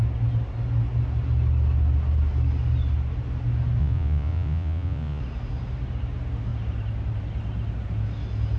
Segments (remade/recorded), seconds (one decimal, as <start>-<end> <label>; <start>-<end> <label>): 0.0-3.8 recorded; 3.8-5.2 remade; 5.2-8.6 recorded